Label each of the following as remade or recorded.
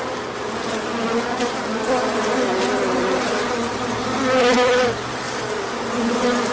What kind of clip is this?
recorded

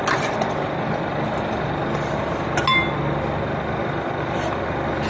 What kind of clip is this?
recorded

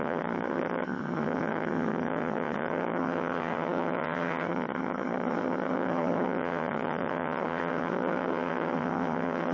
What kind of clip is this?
remade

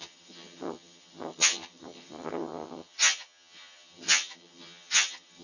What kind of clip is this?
remade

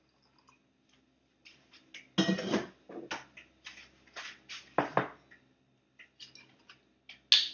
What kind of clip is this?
recorded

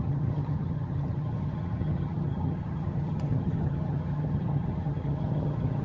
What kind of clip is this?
remade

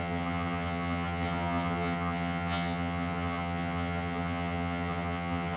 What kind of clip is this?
remade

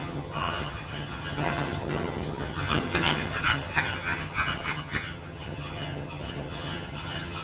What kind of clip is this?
remade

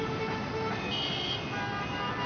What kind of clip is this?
recorded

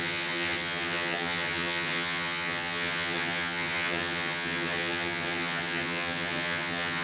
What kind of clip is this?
remade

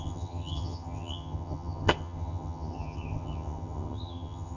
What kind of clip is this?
remade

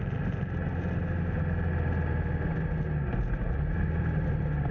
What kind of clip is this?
recorded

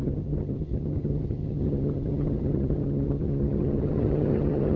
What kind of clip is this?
remade